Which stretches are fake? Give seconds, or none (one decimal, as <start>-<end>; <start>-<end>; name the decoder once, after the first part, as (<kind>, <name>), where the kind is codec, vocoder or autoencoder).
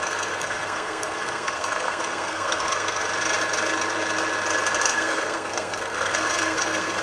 0.0-3.0 (codec, SNAC); 4.8-7.0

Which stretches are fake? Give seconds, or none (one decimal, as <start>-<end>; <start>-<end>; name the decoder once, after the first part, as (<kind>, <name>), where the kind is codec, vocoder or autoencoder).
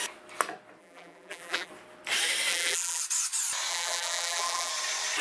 0.8-1.7 (vocoder, BigVGAN v2); 2.5-3.0; 3.7-4.7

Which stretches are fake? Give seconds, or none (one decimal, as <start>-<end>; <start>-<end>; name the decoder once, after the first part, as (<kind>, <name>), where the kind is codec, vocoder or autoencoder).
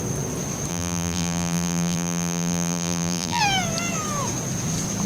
0.7-3.4 (vocoder, BigVGAN v2)